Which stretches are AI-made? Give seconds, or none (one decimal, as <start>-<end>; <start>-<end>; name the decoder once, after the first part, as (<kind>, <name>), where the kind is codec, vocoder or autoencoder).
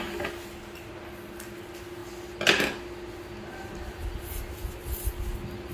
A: none